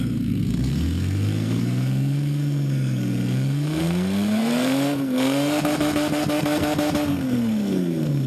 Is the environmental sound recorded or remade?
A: remade